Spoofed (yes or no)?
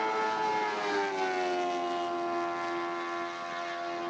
no